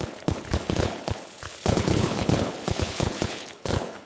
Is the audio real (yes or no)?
no